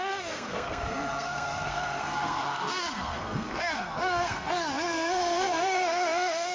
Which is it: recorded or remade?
remade